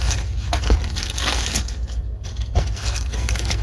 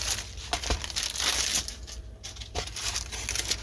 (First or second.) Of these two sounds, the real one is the second